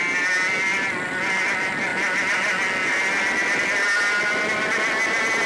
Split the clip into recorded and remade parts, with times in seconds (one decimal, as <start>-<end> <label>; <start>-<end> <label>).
0.0-5.5 recorded